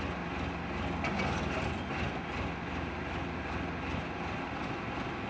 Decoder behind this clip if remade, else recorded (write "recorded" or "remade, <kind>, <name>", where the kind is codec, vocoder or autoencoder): recorded